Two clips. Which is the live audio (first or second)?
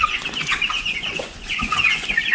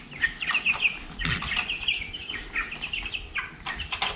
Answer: second